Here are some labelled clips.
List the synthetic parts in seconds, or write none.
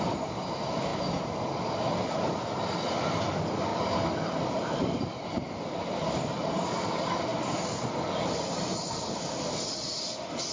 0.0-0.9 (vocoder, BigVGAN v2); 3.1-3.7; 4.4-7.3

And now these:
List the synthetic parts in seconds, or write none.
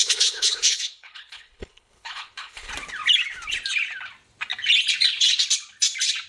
0.0-2.7 (codec, HILCodec)